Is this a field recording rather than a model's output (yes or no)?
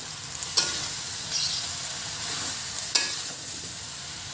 yes